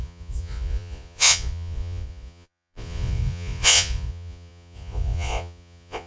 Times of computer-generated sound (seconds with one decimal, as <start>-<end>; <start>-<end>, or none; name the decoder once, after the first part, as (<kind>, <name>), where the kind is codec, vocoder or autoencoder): 0.0-6.1 (vocoder, Vocos)